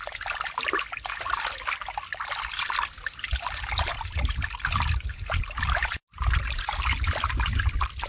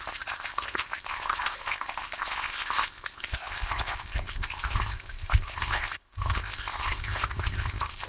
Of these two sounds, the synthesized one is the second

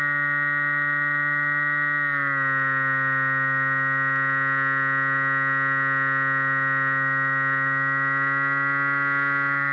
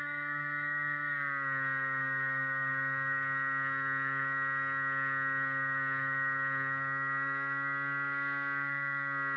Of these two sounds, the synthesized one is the second